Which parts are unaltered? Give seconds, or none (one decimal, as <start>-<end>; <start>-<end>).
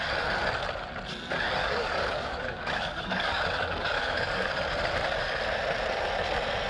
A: 0.0-1.6; 4.5-6.7